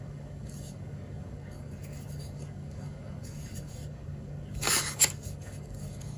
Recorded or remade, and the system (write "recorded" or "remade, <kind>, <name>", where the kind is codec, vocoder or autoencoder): remade, codec, DAC